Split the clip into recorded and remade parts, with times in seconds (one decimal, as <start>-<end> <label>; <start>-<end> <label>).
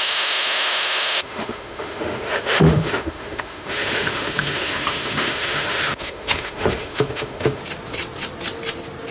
0.0-7.6 remade; 7.6-9.1 recorded